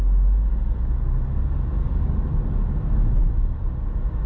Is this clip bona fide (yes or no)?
yes